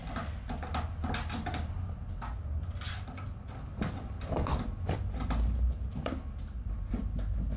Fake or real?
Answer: real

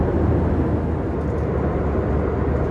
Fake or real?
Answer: real